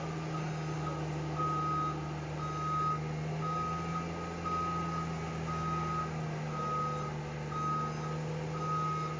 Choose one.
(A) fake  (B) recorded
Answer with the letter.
B